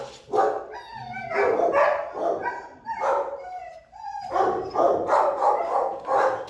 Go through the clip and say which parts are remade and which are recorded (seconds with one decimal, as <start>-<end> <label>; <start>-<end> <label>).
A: 0.0-2.4 recorded; 2.4-5.6 remade; 5.6-6.5 recorded